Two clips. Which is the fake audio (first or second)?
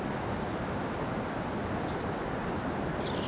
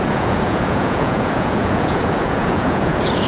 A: second